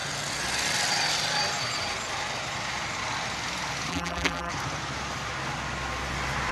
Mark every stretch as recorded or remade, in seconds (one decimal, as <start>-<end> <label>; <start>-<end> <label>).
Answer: 0.0-3.9 recorded; 3.9-4.5 remade; 4.5-6.5 recorded